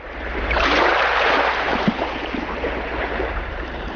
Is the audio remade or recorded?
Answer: remade